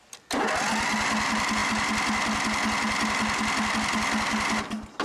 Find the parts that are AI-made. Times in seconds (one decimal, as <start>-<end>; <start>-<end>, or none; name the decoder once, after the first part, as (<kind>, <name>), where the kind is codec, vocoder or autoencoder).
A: none